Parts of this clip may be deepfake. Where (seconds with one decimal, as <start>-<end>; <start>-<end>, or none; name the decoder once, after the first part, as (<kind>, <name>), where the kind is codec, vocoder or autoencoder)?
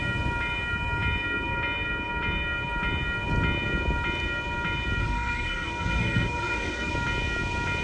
5.0-6.9 (codec, SNAC)